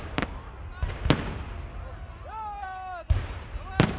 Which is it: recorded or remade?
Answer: recorded